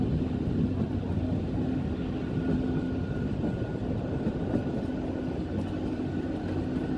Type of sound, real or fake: real